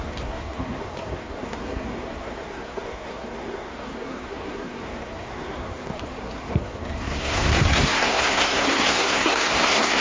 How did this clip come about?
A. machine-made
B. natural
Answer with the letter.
A